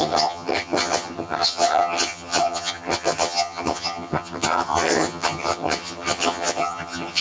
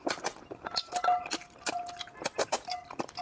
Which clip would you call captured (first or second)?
second